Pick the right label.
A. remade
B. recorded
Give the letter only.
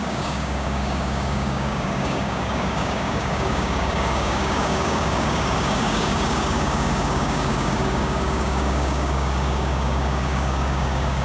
A